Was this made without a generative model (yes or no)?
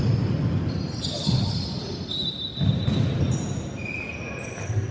yes